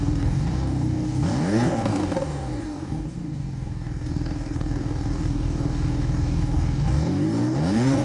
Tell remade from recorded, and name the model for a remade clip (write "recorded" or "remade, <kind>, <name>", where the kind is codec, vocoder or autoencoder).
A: remade, codec, DAC